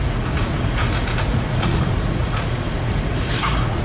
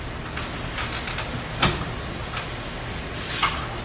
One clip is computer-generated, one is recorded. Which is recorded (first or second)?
second